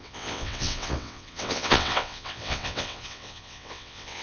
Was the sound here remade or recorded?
remade